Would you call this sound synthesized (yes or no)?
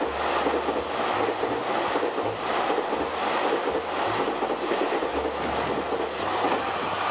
no